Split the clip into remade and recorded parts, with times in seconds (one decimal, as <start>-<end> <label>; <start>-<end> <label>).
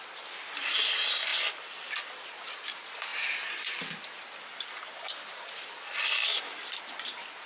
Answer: 0.0-7.5 recorded